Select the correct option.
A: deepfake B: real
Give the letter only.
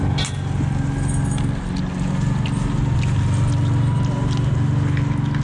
B